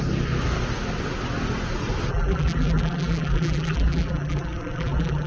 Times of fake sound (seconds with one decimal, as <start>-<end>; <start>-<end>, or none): 2.1-5.3